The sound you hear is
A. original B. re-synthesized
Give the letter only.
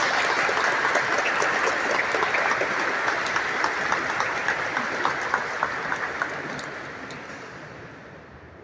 A